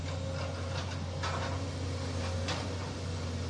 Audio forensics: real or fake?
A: real